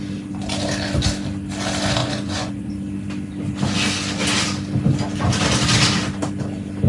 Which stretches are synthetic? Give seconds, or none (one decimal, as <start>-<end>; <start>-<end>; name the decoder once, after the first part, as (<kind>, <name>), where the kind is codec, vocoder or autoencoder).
2.0-2.7 (vocoder, Vocos)